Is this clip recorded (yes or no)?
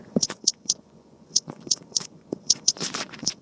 no